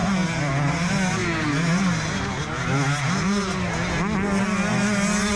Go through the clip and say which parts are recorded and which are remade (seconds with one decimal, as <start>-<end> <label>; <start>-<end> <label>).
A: 0.0-5.4 recorded